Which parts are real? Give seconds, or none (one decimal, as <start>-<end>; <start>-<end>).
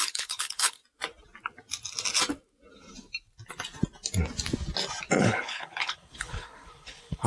0.8-5.2